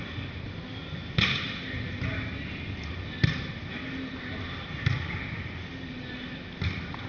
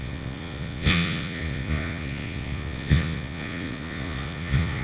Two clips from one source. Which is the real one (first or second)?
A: first